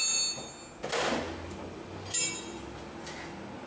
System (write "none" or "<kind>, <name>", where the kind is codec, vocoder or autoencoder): none